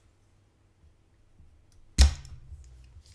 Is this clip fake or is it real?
real